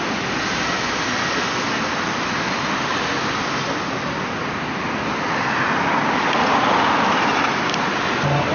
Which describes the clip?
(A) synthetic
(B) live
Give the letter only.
B